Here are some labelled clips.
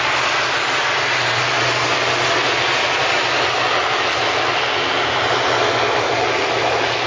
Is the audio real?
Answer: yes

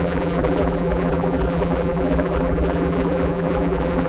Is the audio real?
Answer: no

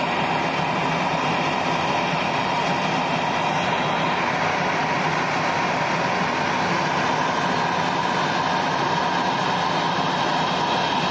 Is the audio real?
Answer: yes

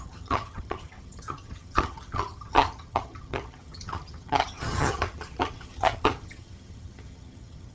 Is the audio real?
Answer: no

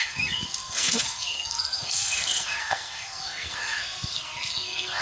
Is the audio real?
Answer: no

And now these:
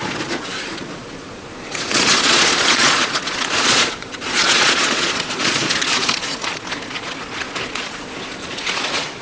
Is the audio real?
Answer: no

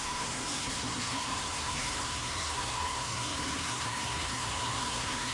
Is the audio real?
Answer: no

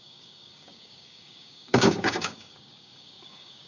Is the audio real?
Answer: no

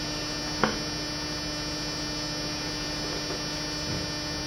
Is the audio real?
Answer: yes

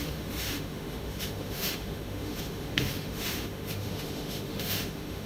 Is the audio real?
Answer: no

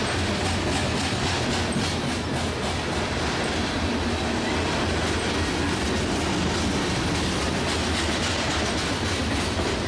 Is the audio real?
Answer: yes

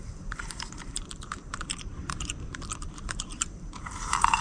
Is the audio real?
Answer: no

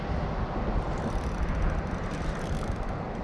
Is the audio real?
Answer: yes